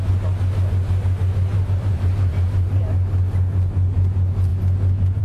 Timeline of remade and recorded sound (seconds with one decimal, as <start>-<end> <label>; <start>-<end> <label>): 0.0-1.5 recorded; 1.5-2.8 remade; 2.8-5.2 recorded